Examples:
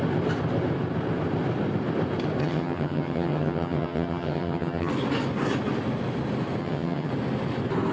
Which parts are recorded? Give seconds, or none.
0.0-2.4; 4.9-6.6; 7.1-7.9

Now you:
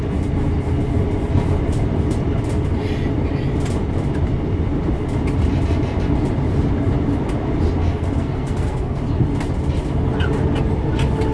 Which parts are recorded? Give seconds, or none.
0.0-7.9; 9.0-11.3

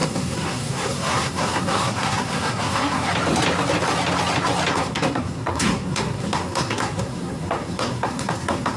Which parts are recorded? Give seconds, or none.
3.1-4.7

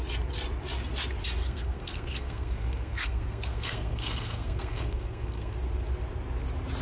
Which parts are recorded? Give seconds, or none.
0.0-1.4; 5.5-6.8

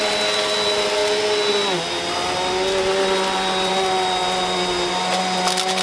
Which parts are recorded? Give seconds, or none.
0.0-5.8